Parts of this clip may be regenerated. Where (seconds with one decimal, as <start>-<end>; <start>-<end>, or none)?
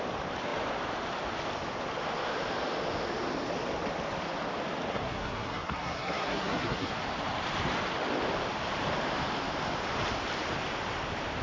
4.9-6.9